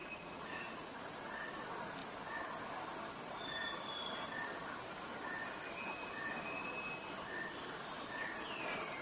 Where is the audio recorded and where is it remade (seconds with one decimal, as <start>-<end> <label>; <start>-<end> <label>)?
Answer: 0.0-1.0 remade; 1.0-9.0 recorded